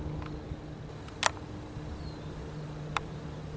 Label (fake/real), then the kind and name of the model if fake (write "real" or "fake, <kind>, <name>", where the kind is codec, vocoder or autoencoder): real